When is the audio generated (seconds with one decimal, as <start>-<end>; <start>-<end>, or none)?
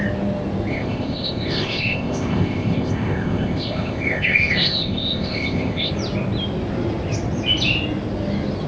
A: 0.7-5.9